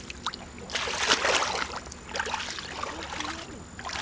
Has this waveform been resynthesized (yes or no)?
no